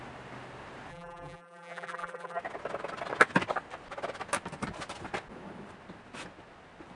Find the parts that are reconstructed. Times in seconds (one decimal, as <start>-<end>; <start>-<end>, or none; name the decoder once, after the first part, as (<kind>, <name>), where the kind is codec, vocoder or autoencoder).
0.9-2.4 (vocoder, BigVGAN v2)